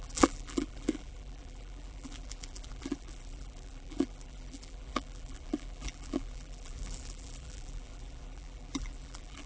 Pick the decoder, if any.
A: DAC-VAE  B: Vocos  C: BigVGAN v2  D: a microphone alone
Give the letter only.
C